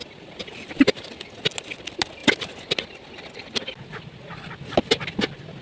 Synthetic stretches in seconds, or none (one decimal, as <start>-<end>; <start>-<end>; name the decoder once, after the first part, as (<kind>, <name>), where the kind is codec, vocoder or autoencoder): none